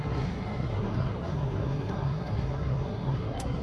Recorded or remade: remade